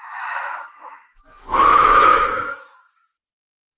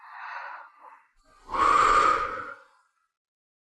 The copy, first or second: first